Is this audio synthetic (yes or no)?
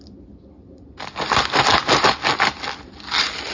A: no